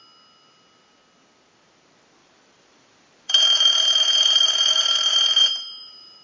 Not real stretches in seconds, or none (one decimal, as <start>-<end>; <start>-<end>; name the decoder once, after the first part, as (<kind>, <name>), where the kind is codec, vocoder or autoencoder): 2.2-6.2 (vocoder, BigVGAN v2)